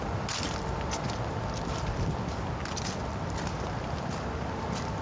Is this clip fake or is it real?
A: real